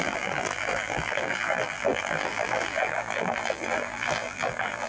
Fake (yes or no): yes